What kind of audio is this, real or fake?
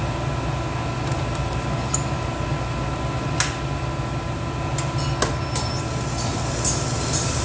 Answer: real